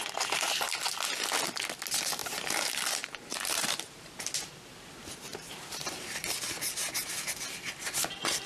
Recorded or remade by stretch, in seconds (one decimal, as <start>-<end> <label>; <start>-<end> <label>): 0.0-2.2 recorded; 2.2-2.7 remade; 2.7-3.3 recorded; 3.3-4.5 remade; 4.5-5.0 recorded; 5.0-6.2 remade; 6.2-8.5 recorded